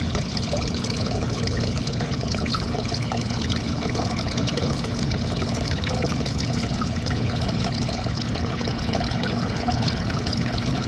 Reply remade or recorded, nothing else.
remade